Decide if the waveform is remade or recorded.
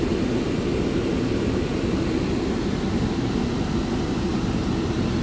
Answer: recorded